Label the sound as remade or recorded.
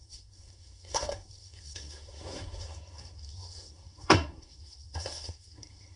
remade